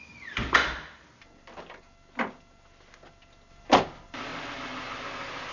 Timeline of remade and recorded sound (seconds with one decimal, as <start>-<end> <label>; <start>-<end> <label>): 0.0-0.6 remade; 0.6-3.5 recorded; 3.5-4.3 remade; 4.3-5.5 recorded